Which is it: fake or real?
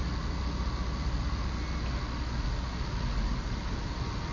real